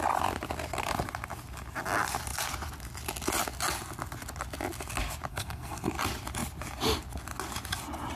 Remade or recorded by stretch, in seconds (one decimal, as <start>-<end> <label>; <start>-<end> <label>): 0.0-5.3 recorded; 5.3-5.9 remade; 5.9-8.2 recorded